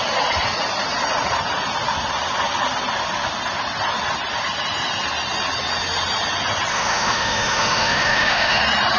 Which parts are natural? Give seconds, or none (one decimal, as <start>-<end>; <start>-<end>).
0.0-6.7; 8.6-9.0